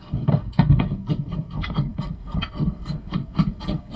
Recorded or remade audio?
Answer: remade